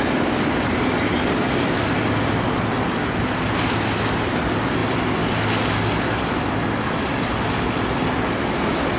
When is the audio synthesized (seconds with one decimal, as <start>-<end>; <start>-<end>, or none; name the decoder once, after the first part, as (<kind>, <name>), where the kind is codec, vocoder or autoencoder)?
none